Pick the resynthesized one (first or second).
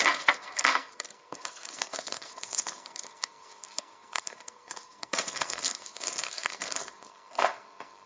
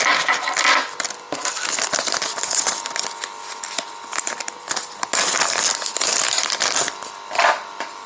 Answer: first